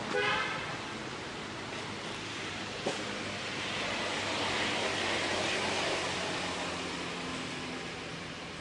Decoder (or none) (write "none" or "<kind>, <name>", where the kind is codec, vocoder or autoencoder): none